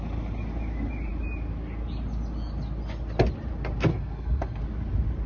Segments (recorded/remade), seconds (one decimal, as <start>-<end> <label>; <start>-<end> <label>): 0.0-3.9 recorded; 3.9-4.6 remade; 4.6-5.3 recorded